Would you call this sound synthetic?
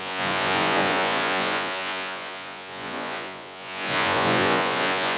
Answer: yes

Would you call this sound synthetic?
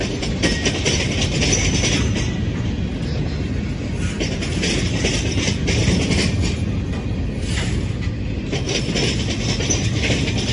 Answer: no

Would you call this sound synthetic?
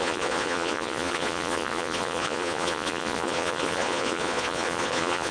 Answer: yes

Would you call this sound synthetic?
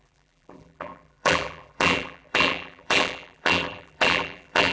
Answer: yes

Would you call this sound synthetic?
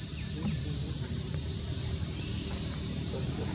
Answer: yes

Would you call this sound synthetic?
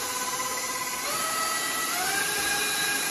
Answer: no